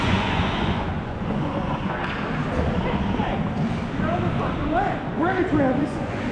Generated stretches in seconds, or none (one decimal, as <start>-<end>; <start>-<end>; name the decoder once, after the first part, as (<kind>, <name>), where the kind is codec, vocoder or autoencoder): 0.0-2.0 (vocoder, Vocos); 5.8-6.3